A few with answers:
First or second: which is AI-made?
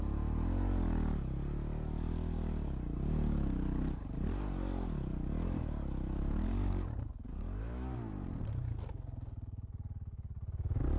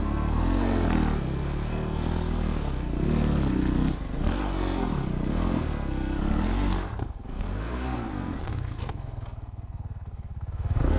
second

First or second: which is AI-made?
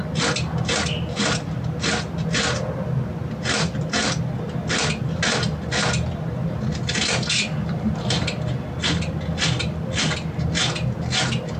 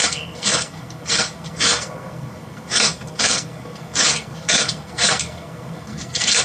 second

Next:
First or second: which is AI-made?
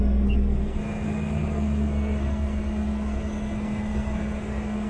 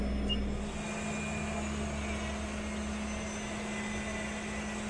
first